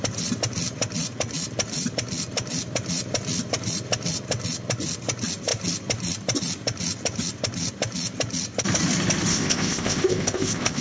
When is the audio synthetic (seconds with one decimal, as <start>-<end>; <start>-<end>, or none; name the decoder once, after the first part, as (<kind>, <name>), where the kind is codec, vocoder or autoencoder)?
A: 9.3-10.8 (codec, ZipCodec)